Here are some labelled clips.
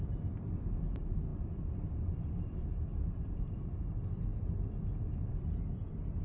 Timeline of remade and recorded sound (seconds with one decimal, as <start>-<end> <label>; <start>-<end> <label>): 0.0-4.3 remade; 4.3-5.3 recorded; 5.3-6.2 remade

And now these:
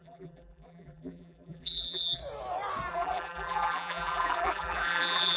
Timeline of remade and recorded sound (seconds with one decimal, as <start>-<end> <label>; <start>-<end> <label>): 0.0-2.2 remade; 2.2-2.9 recorded; 2.9-5.4 remade

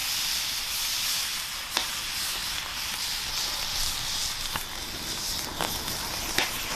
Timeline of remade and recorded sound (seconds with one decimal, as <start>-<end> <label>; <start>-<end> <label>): 0.0-2.7 recorded; 2.7-3.3 remade; 3.3-6.7 recorded

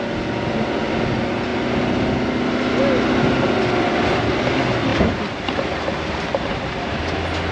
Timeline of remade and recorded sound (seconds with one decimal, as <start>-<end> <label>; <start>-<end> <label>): 0.0-4.9 recorded; 4.9-7.0 remade; 7.0-7.5 recorded